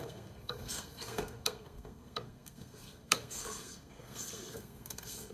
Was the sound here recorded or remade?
remade